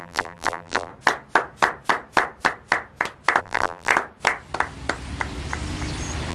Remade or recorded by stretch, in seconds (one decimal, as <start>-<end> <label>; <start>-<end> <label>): 0.0-0.9 remade; 0.9-3.4 recorded; 3.4-3.9 remade; 3.9-6.3 recorded